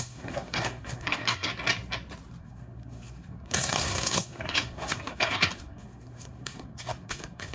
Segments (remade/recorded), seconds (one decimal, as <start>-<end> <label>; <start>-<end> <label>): 0.0-1.5 remade; 1.5-2.4 recorded; 2.4-7.5 remade